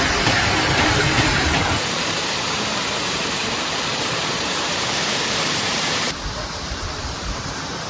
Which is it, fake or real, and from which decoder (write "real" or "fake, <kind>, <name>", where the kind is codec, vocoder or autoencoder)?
fake, vocoder, BigVGAN v2